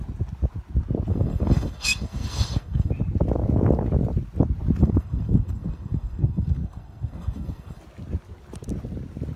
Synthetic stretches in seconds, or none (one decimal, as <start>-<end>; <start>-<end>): 1.1-2.9; 4.8-7.8